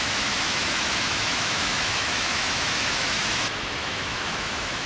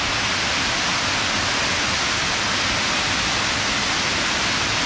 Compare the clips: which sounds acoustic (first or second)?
second